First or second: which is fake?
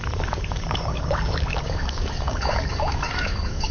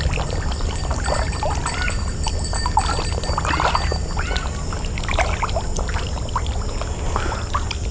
first